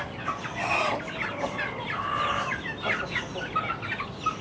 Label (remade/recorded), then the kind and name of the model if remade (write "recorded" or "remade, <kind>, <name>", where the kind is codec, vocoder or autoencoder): recorded